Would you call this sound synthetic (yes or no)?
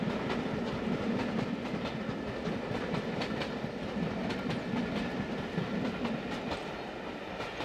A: no